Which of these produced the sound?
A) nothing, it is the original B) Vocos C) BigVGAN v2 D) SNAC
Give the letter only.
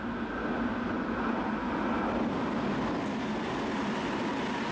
A